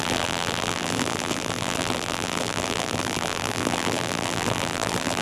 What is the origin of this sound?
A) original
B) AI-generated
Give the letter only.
B